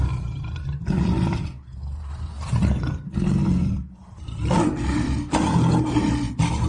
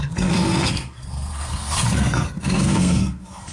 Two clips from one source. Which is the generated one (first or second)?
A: second